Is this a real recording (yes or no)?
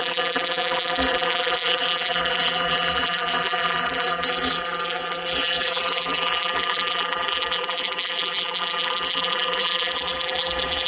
no